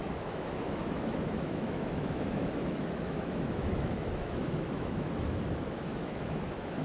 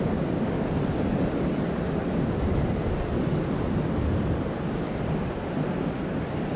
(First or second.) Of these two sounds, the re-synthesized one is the first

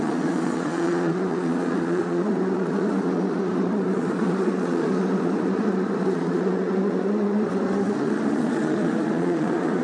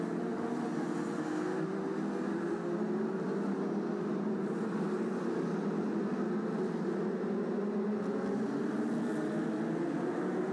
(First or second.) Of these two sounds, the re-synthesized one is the first